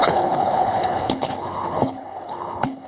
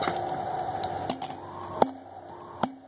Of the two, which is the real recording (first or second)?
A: second